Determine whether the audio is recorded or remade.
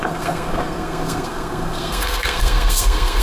remade